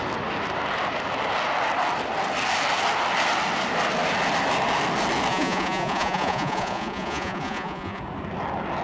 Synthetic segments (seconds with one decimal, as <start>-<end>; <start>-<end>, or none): 5.3-8.0